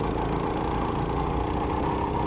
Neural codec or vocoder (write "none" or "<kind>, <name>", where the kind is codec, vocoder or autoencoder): none